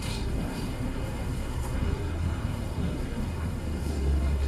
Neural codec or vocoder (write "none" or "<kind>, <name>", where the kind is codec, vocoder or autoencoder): codec, SNAC